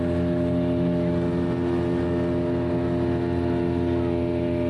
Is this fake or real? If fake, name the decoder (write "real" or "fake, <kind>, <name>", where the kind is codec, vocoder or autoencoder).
real